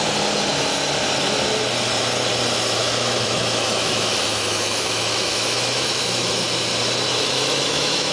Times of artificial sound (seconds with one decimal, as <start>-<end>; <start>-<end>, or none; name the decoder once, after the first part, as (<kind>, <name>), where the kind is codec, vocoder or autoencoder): 2.8-6.2 (autoencoder, DAC-VAE); 7.1-8.1